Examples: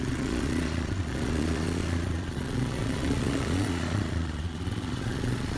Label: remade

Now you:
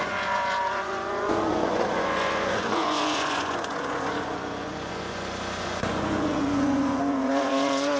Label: remade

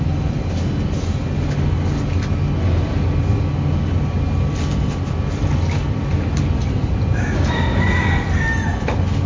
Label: recorded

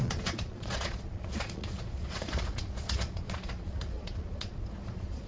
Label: remade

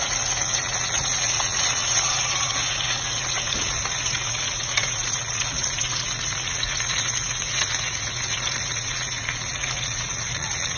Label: remade